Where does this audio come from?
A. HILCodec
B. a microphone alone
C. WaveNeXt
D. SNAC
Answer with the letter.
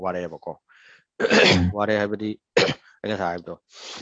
B